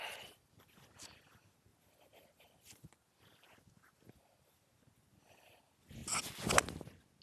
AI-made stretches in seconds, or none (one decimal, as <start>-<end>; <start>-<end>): none